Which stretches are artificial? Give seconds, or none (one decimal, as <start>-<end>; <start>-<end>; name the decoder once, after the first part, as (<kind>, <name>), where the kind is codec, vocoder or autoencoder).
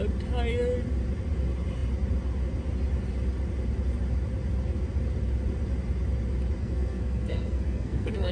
6.6-8.3 (codec, SNAC)